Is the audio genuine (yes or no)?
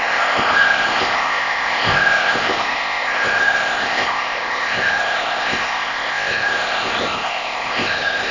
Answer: no